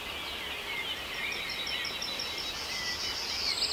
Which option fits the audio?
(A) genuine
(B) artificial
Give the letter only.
A